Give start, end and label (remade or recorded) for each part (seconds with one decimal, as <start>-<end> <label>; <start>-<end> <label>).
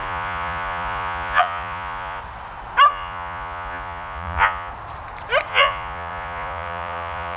0.0-2.2 remade; 2.2-2.9 recorded; 2.9-4.7 remade; 4.7-5.5 recorded; 5.5-7.4 remade